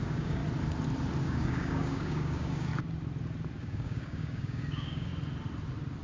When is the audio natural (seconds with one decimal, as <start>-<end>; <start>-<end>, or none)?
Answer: 0.4-1.2; 2.7-3.6; 5.1-6.0